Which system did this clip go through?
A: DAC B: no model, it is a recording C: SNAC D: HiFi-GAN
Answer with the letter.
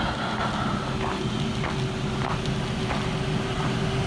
B